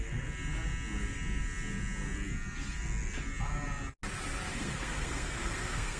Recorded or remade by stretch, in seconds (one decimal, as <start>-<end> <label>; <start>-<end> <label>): 0.0-4.6 recorded; 4.6-6.0 remade